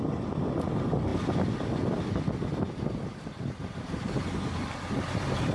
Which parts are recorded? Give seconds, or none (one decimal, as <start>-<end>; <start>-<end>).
0.0-5.5